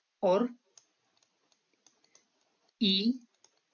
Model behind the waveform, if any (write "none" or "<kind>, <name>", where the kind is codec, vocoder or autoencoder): none